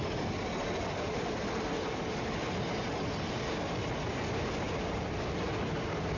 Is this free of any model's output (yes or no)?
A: yes